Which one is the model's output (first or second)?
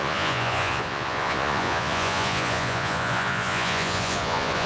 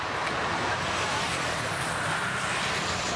first